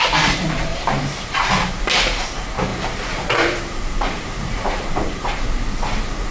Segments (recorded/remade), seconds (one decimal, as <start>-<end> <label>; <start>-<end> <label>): 0.0-0.7 recorded; 0.7-1.7 remade; 1.7-2.7 recorded; 2.7-5.4 remade; 5.4-6.3 recorded